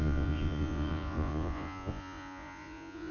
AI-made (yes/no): yes